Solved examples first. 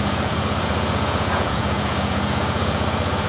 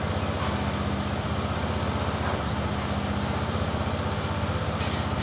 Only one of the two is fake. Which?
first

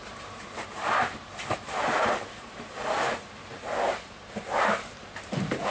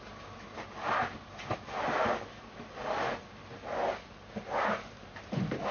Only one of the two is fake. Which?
first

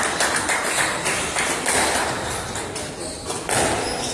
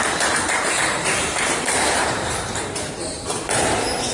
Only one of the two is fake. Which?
second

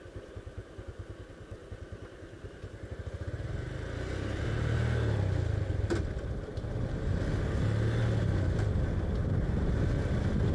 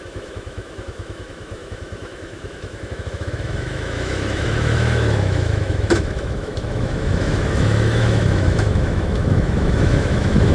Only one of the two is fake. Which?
second